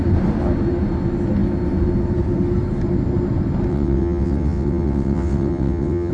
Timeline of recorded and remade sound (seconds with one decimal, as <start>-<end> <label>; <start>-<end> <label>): 0.0-3.7 recorded; 3.7-6.1 remade